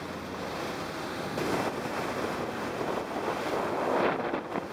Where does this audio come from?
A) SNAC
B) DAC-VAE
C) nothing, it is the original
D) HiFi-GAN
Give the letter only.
C